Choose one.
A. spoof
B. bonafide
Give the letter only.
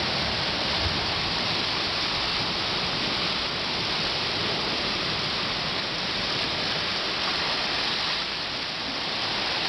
B